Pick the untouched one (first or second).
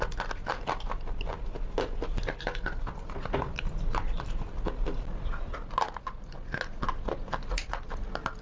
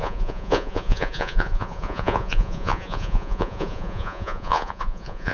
first